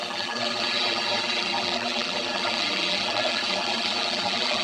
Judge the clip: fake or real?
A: fake